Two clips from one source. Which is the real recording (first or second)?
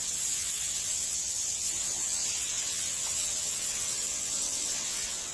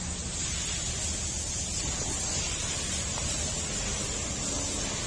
second